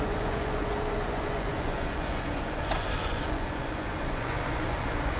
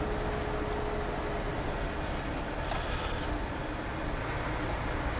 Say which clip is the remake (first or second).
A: first